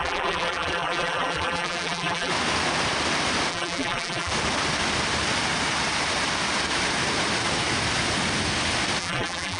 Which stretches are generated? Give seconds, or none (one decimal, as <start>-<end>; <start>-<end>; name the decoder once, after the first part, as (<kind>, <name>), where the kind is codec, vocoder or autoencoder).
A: 0.0-2.3 (vocoder, BigVGAN v2); 3.5-4.3; 9.0-9.6